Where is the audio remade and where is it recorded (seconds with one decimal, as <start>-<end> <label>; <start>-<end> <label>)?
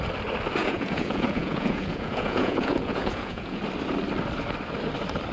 0.0-0.6 recorded; 0.6-3.6 remade; 3.6-5.3 recorded